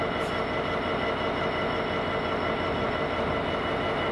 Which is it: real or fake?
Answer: real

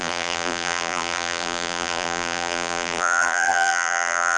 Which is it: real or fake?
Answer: fake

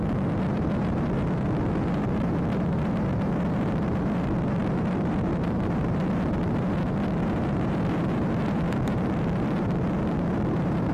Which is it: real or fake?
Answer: fake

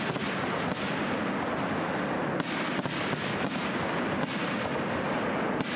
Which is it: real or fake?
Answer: real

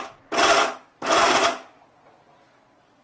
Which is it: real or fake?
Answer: real